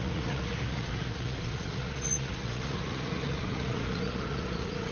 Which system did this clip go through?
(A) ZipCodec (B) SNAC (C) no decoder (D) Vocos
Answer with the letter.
D